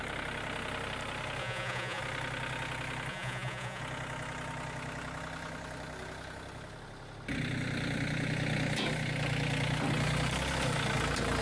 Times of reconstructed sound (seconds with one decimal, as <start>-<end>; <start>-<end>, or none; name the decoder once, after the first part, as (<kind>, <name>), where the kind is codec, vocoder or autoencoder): 1.4-2.0 (vocoder, Vocos); 3.1-3.8